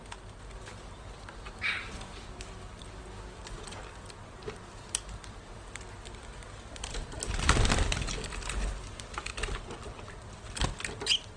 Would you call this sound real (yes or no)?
yes